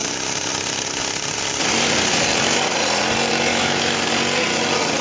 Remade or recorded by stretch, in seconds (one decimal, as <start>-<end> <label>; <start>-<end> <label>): 0.0-3.5 recorded; 3.5-4.1 remade; 4.1-5.0 recorded